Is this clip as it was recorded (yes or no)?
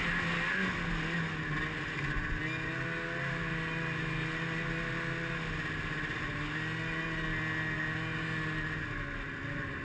yes